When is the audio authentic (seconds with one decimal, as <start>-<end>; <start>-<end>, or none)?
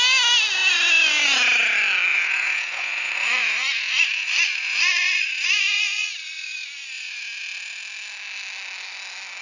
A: 0.0-2.1; 7.2-9.4